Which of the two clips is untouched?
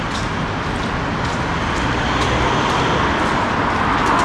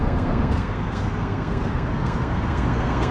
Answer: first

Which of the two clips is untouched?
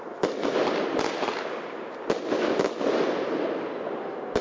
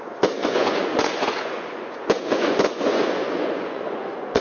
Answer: first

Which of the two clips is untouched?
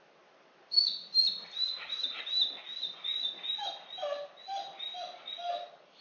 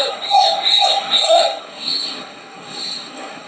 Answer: first